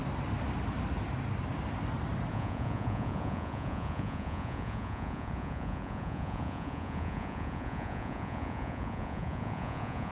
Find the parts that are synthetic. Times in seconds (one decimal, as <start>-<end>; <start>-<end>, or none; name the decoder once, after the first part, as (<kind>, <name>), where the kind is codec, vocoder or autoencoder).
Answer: 2.3-10.1 (vocoder, Vocos)